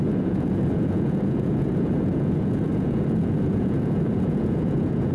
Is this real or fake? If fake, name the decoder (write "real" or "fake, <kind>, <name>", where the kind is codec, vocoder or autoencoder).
fake, vocoder, Vocos